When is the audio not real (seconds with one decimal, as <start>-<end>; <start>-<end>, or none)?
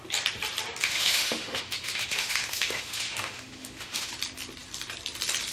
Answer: 0.8-4.1